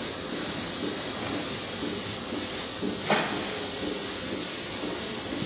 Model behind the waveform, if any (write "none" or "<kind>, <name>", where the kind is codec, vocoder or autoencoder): none